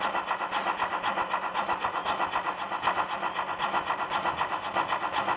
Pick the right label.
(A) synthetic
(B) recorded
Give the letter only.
B